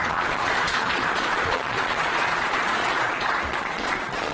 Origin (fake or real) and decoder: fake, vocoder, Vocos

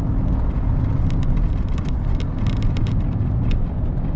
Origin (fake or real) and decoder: fake, vocoder, BigVGAN v2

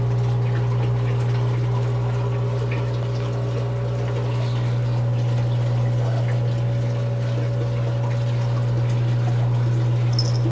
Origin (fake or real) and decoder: real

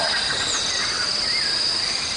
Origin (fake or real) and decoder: real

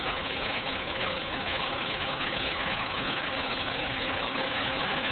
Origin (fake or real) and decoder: fake, codec, HILCodec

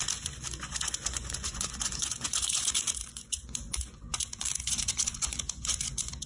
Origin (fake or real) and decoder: fake, vocoder, Vocos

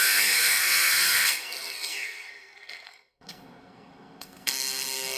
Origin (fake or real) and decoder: fake, codec, SNAC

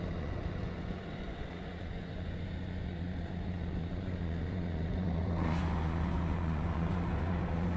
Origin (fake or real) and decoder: fake, vocoder, Vocos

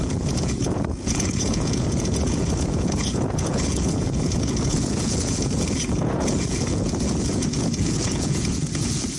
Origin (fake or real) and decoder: fake, vocoder, Vocos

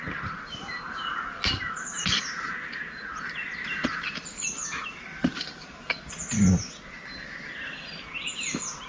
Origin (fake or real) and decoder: real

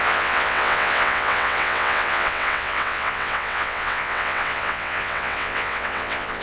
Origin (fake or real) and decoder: fake, vocoder, WaveNeXt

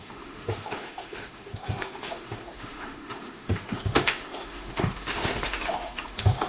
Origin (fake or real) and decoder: fake, autoencoder, DAC-VAE